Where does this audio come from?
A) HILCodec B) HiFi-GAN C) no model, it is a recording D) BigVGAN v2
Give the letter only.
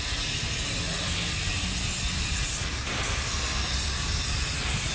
C